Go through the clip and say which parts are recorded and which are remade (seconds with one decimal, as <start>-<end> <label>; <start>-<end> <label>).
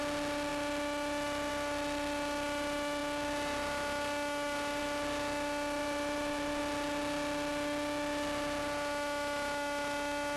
0.0-5.8 recorded; 5.8-6.6 remade; 6.6-10.4 recorded